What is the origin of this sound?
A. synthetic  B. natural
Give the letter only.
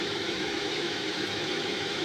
A